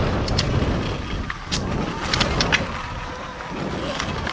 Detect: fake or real real